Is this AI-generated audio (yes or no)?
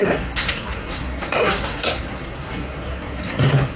yes